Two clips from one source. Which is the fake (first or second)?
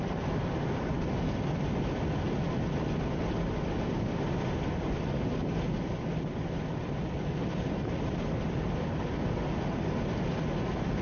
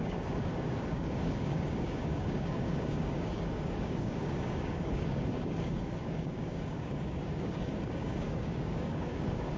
second